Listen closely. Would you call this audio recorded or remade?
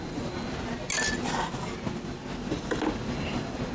recorded